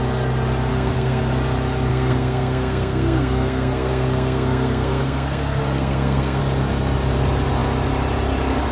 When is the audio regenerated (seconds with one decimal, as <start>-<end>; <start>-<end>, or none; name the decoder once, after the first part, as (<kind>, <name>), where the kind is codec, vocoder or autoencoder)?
0.7-1.2 (codec, SNAC); 1.9-6.4